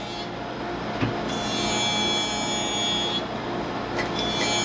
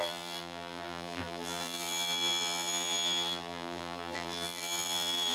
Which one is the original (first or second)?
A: first